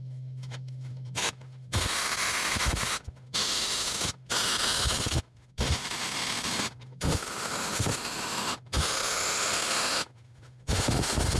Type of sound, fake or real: fake